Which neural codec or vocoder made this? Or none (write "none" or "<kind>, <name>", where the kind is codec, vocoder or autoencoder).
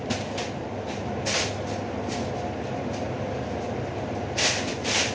none